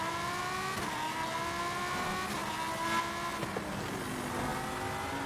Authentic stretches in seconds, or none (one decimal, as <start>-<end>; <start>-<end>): 0.0-5.3